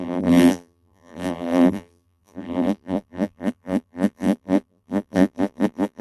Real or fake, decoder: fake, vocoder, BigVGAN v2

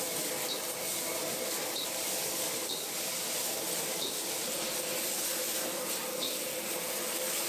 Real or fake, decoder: real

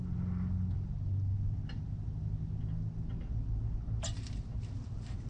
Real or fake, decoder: real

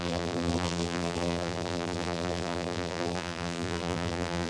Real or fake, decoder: fake, vocoder, BigVGAN v2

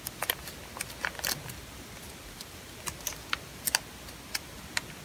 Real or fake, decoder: real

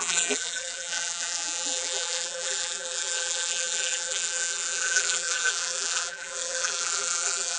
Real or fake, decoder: fake, vocoder, BigVGAN v2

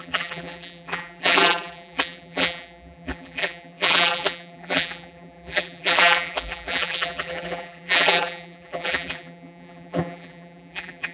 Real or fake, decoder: fake, vocoder, BigVGAN v2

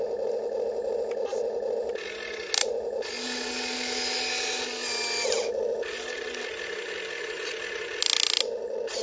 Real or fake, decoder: real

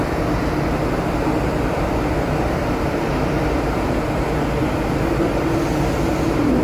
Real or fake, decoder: real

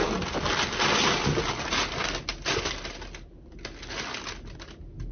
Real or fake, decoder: real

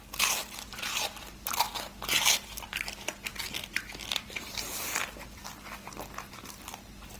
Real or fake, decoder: fake, vocoder, BigVGAN v2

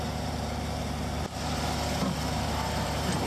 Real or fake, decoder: fake, vocoder, BigVGAN v2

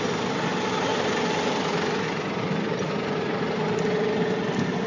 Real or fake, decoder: real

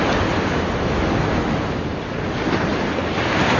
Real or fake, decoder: real